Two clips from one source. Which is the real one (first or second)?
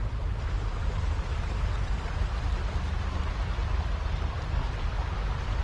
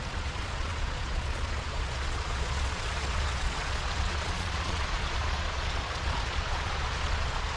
first